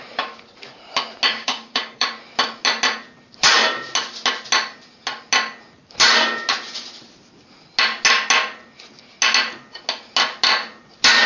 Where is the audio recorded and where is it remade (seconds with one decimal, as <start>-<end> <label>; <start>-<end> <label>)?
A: 0.0-1.3 recorded; 1.3-2.1 remade; 2.1-11.3 recorded